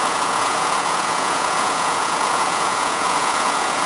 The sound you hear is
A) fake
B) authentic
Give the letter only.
A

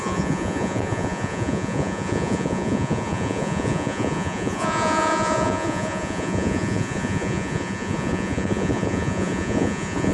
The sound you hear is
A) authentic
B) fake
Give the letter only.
B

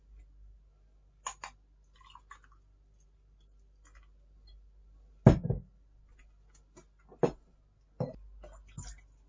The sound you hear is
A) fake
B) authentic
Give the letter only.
B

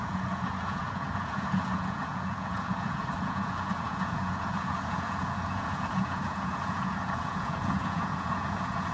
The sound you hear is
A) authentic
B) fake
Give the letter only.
B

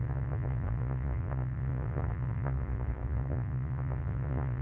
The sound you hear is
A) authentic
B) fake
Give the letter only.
B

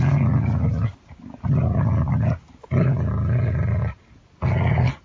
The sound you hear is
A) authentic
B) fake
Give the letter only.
A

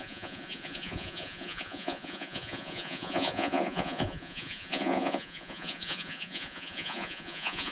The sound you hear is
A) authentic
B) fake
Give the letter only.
B